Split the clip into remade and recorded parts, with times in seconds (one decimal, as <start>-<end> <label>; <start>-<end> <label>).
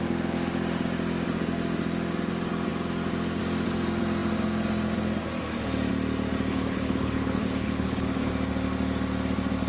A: 0.0-6.5 recorded; 6.5-8.3 remade; 8.3-9.7 recorded